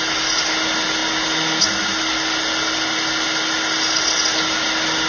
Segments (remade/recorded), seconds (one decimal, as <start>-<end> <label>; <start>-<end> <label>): 0.0-5.1 recorded